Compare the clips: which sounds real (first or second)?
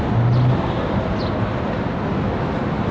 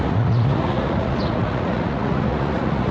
first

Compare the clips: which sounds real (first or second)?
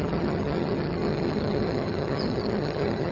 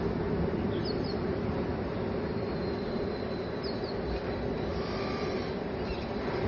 second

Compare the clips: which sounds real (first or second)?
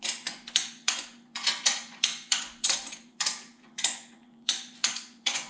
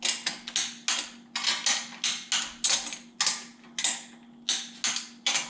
second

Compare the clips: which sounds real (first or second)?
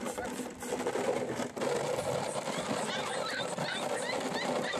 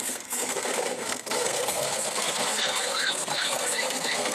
first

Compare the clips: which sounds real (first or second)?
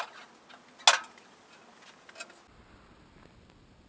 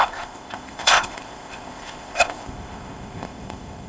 first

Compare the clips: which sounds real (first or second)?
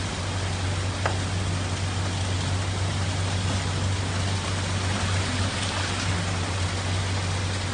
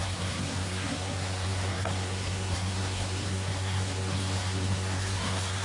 first